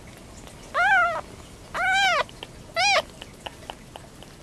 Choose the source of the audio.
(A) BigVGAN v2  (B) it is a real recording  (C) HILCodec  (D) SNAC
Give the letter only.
B